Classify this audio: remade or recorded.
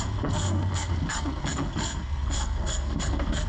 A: remade